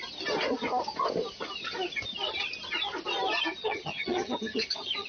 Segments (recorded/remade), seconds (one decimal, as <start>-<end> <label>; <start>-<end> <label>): 0.0-3.6 recorded; 3.6-5.1 remade